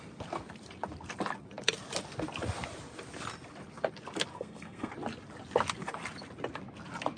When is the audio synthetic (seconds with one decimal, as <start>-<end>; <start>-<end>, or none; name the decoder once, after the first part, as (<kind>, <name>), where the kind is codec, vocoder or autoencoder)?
4.3-4.9 (codec, SNAC)